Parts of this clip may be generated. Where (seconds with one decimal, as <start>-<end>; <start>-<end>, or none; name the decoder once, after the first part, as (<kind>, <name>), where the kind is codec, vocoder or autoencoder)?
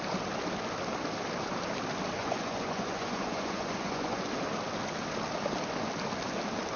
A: 2.2-4.2 (vocoder, Vocos)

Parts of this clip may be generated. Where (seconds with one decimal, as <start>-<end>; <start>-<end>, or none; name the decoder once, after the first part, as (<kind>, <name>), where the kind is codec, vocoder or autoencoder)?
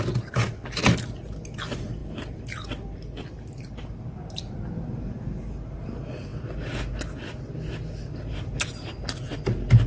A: none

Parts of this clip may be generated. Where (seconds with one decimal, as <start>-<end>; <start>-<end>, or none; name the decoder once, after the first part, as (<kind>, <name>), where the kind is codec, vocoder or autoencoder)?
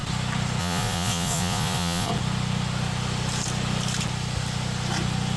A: 0.6-2.1 (vocoder, Vocos)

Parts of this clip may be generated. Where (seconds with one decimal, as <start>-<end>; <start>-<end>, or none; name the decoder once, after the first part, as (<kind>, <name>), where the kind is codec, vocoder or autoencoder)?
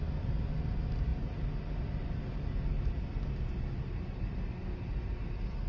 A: none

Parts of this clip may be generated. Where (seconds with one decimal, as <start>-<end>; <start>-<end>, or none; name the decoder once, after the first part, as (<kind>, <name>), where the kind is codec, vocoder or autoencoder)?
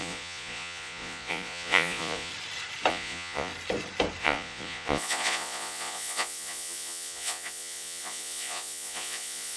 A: 0.0-2.3 (vocoder, Vocos); 2.9-3.5; 4.2-9.6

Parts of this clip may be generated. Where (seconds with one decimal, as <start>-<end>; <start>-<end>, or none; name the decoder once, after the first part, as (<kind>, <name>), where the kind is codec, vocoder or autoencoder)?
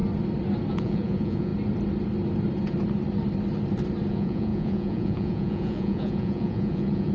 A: 0.7-1.5 (vocoder, Vocos); 4.1-7.1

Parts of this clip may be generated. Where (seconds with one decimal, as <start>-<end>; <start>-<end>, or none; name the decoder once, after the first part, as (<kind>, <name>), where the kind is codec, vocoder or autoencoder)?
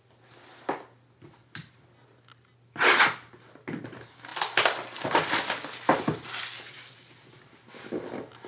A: none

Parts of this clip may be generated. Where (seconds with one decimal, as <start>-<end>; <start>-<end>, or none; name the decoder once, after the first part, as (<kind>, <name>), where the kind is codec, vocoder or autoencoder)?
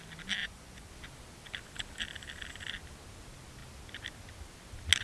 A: 0.4-0.9 (vocoder, Vocos)